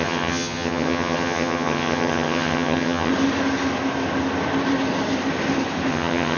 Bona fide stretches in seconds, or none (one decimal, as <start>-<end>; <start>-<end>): 3.1-5.9